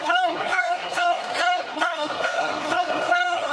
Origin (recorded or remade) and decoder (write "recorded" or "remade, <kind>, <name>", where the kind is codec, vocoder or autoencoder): remade, codec, SNAC